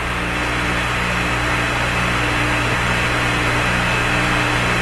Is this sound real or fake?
real